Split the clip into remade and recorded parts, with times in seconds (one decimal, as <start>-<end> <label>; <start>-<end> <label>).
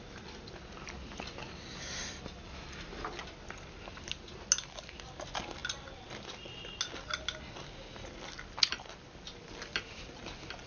0.0-10.7 recorded